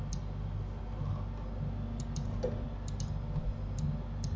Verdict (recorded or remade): recorded